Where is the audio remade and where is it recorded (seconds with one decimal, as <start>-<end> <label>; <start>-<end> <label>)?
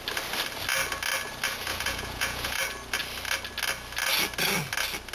0.0-1.7 recorded; 1.7-2.6 remade; 2.6-5.1 recorded